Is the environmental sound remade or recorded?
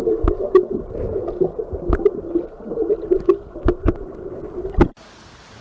recorded